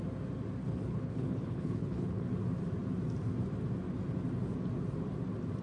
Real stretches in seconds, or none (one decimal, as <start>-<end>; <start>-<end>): 0.0-0.6; 2.3-5.6